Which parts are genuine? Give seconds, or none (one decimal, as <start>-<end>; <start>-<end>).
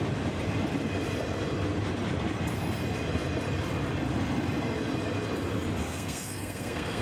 0.0-5.8